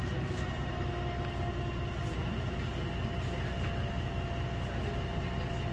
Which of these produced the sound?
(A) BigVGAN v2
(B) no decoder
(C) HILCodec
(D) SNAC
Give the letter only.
B